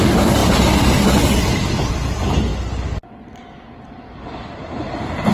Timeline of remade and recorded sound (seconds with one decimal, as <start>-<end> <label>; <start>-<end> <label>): 0.0-0.4 remade; 0.4-1.9 recorded; 1.9-2.5 remade; 2.5-4.8 recorded; 4.8-5.3 remade